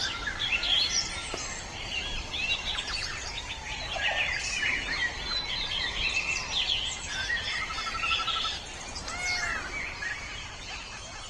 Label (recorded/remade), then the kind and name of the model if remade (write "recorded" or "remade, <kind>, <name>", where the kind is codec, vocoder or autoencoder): recorded